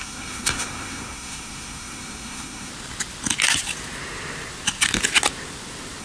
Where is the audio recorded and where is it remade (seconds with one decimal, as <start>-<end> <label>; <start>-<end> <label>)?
0.0-2.7 remade; 2.7-6.0 recorded

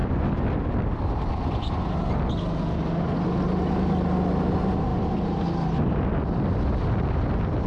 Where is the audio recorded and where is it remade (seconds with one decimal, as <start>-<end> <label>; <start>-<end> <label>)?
0.0-7.7 recorded

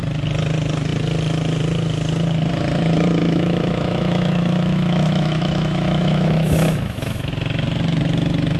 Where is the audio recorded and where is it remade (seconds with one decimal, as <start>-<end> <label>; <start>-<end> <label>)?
0.0-3.2 recorded; 3.2-7.3 remade; 7.3-8.6 recorded

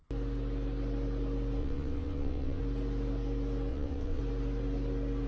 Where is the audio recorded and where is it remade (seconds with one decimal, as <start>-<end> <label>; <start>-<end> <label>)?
0.0-1.6 recorded; 1.6-2.6 remade; 2.6-3.7 recorded; 3.7-4.2 remade; 4.2-5.3 recorded

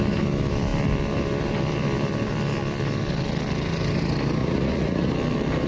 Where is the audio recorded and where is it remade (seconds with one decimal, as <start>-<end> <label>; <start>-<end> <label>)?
0.0-4.4 recorded; 4.4-5.1 remade; 5.1-5.7 recorded

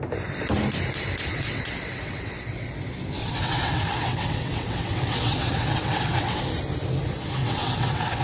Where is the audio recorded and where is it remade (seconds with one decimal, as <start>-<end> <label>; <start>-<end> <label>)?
0.0-1.3 recorded; 1.3-2.7 remade; 2.7-3.2 recorded; 3.2-6.4 remade; 6.4-7.4 recorded; 7.4-8.2 remade

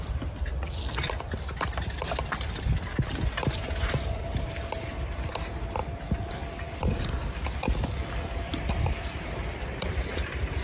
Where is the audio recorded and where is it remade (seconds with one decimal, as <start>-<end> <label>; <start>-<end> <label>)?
0.0-10.6 recorded